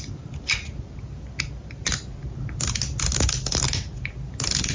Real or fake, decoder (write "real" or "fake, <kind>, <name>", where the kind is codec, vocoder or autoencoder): real